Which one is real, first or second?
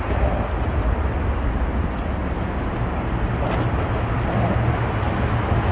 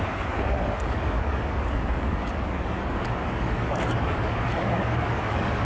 first